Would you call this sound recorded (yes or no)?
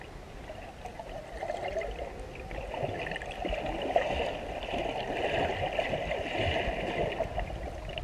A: yes